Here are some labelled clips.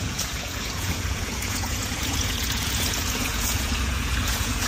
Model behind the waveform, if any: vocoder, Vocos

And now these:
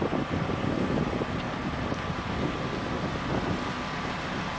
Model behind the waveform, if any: none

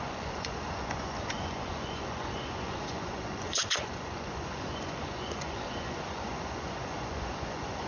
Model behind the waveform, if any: vocoder, Vocos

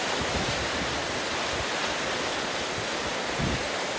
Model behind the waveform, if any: none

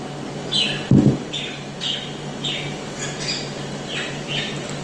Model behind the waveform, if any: none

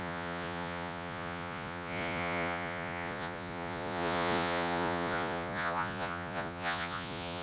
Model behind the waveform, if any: vocoder, Vocos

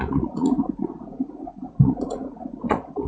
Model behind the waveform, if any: vocoder, Vocos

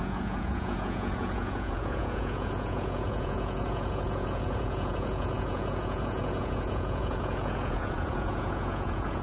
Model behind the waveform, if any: vocoder, Vocos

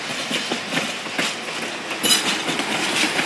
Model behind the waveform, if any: none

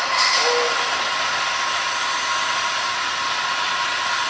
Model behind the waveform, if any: none